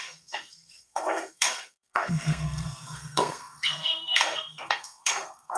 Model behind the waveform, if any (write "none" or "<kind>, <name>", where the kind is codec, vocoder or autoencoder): codec, SNAC